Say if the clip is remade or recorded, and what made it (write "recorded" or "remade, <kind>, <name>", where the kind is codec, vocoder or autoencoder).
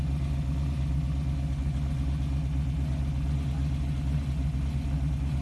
recorded